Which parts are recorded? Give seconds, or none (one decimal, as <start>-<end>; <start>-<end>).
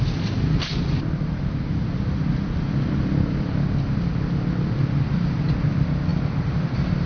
0.0-6.1